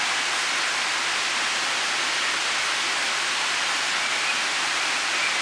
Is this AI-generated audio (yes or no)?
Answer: no